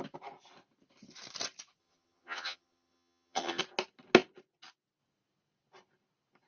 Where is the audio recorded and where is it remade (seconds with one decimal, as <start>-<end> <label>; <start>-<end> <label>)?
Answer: 0.0-1.8 recorded; 1.8-3.6 remade; 3.6-6.5 recorded